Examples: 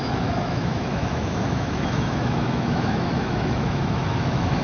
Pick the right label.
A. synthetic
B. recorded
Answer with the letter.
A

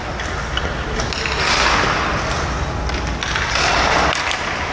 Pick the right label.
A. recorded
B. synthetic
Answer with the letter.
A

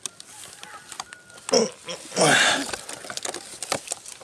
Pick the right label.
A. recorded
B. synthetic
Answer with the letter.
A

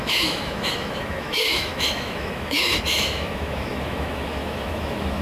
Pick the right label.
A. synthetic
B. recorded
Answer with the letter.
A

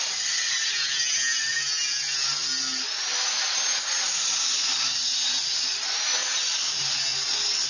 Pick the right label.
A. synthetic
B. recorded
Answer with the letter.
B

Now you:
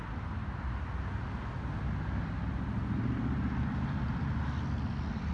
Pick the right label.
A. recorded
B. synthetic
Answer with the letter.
A